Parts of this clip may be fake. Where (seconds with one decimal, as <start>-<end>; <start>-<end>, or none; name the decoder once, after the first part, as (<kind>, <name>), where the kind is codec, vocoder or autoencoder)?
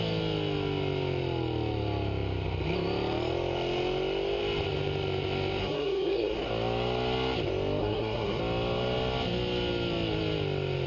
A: 5.6-6.5 (codec, SNAC); 7.8-8.4